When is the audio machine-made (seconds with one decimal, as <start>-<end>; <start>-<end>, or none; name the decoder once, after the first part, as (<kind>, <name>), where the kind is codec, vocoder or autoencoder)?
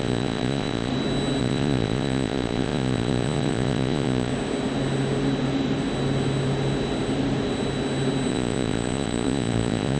0.0-0.9 (vocoder, Vocos); 1.4-4.3; 8.3-10.0